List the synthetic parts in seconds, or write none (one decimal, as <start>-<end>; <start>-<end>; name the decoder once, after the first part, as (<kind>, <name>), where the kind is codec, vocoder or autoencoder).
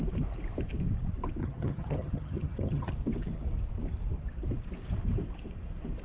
1.4-2.9 (vocoder, HiFi-GAN)